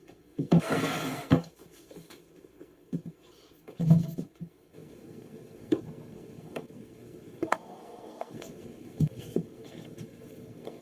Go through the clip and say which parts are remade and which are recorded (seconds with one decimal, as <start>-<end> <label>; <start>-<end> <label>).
0.0-10.8 remade